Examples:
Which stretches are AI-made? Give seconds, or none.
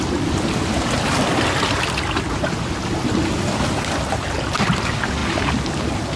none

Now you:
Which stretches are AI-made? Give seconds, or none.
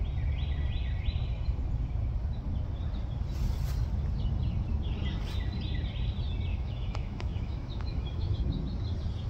6.5-8.4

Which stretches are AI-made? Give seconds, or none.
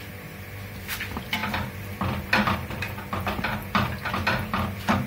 none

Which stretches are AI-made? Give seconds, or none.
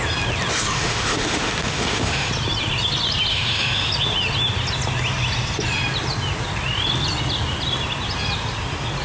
0.7-2.3; 3.3-3.9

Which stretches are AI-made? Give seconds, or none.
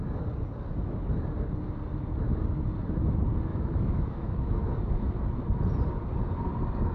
3.5-5.1